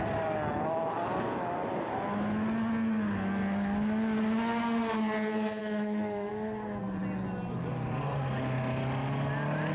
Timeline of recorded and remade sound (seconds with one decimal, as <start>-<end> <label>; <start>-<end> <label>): 0.0-5.6 recorded; 5.6-6.3 remade; 6.3-9.7 recorded